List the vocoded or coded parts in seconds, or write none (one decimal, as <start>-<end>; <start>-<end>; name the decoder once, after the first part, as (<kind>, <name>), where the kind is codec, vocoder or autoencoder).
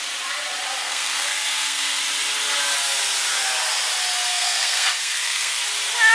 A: 0.8-2.0 (codec, SNAC); 4.3-5.6